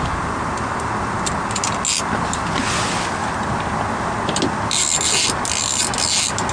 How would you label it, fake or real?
real